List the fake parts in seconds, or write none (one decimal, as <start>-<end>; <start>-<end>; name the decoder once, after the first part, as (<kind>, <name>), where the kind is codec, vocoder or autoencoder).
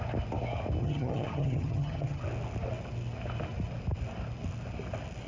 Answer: 0.8-2.2 (vocoder, HiFi-GAN)